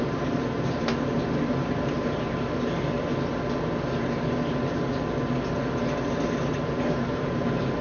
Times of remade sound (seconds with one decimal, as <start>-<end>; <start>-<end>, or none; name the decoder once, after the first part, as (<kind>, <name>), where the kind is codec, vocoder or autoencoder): 0.0-3.1 (vocoder, BigVGAN v2); 6.7-7.8